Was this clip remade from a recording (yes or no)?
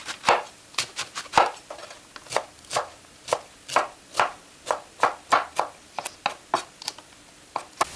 no